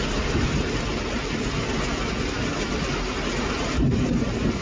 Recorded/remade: recorded